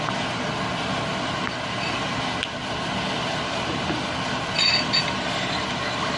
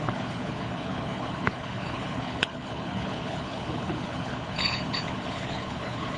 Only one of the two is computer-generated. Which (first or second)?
second